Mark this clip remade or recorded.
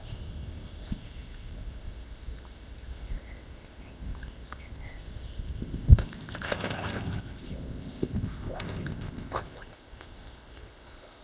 remade